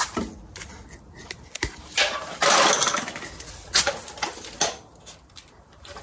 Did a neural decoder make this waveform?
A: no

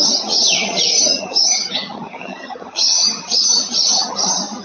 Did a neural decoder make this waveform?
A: yes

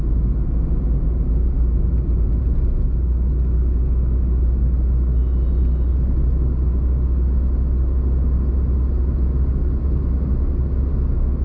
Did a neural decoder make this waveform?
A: no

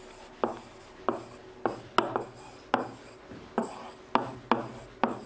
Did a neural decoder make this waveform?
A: no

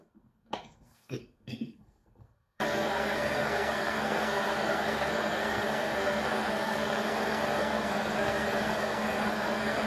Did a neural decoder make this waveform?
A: yes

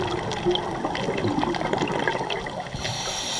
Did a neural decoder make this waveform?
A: no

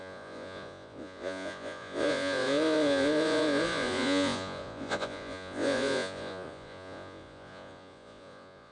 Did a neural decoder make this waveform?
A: yes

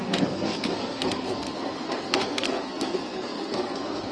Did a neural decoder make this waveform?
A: yes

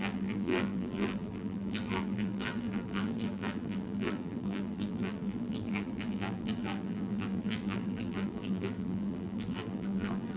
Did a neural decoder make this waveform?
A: yes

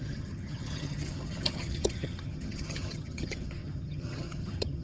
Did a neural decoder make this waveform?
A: yes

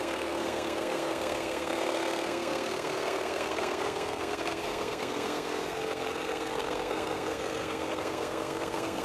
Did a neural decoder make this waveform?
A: yes